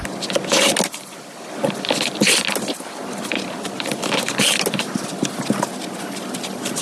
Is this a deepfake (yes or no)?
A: no